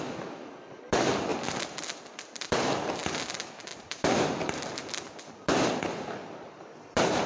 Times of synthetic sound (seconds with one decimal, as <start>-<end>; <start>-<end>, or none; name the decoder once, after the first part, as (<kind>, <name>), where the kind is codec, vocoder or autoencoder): 1.3-1.9 (vocoder, BigVGAN v2); 3.7-5.2